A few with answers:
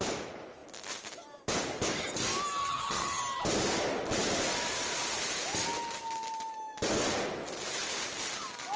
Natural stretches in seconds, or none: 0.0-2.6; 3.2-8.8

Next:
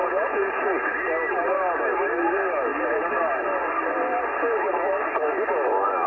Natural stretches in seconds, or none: 0.5-6.1

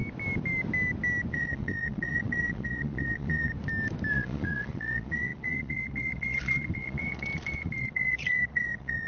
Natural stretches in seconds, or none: 0.0-1.3; 3.5-4.1

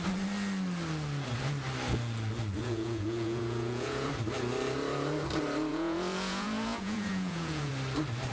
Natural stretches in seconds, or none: 0.0-2.6; 4.1-5.7; 7.7-8.3

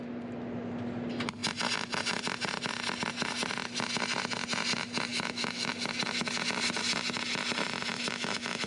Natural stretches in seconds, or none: 0.0-5.1; 5.7-7.9